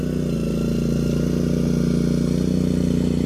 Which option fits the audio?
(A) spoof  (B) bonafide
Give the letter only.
B